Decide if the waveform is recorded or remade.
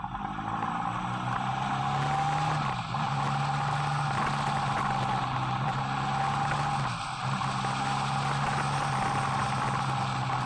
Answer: recorded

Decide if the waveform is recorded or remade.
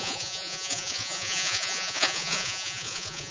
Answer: remade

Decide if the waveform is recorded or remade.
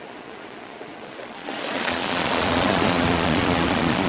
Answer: remade